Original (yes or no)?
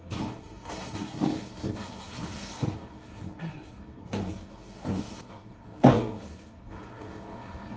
no